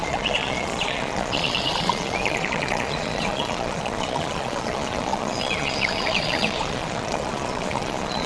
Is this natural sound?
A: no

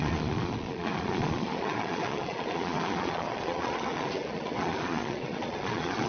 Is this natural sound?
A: no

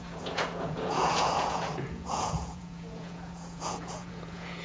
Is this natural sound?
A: no